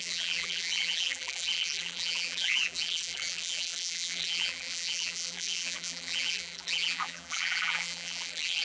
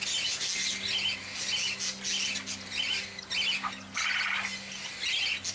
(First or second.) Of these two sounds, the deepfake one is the first